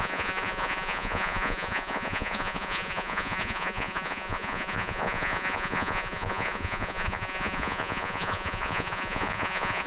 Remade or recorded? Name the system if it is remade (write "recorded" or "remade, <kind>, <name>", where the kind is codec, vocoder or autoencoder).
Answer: remade, vocoder, Vocos